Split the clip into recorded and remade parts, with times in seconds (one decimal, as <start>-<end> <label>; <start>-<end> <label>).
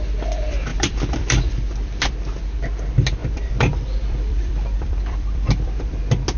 0.0-0.7 recorded; 0.7-2.1 remade; 2.1-3.2 recorded; 3.2-6.0 remade; 6.0-6.4 recorded